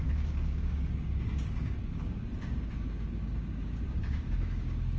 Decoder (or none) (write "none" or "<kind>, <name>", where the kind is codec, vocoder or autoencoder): codec, DAC